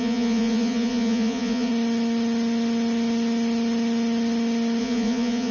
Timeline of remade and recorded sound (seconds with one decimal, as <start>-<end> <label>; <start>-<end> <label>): 0.0-1.7 remade; 1.7-4.8 recorded; 4.8-5.5 remade